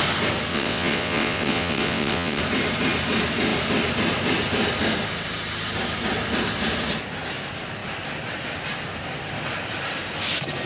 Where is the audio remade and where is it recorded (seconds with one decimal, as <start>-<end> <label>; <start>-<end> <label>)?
0.0-0.5 recorded; 0.5-2.4 remade; 2.4-10.7 recorded